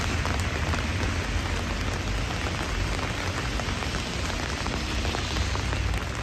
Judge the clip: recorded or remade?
recorded